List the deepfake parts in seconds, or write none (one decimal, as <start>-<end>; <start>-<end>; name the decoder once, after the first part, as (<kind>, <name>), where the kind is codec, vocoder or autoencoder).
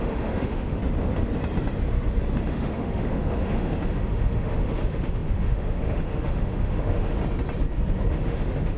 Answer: 0.0-0.8 (autoencoder, DAC-VAE); 2.5-7.2; 8.1-8.8